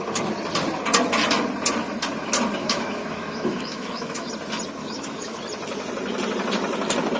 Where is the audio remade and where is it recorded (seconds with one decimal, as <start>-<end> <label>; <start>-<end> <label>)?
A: 0.0-2.6 recorded; 2.6-4.3 remade; 4.3-4.8 recorded; 4.8-5.4 remade; 5.4-7.2 recorded